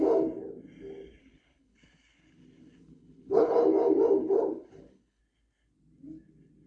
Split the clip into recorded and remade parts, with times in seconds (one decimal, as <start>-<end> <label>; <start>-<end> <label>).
0.0-1.2 recorded; 1.2-3.5 remade; 3.5-4.2 recorded; 4.2-5.2 remade; 5.2-6.7 recorded